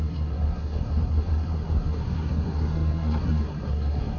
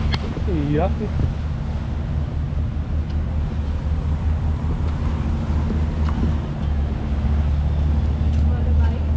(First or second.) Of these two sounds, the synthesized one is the first